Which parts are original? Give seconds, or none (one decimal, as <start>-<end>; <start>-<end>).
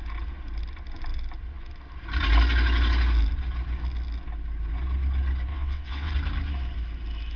0.0-5.5; 6.1-7.4